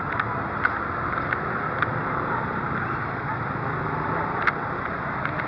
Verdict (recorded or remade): recorded